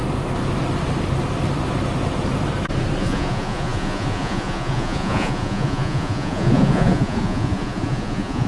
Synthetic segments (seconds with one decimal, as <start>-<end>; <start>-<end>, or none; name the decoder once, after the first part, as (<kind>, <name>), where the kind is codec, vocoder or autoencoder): 3.0-8.5 (vocoder, Vocos)